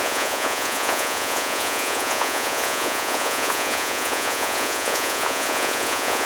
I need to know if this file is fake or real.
fake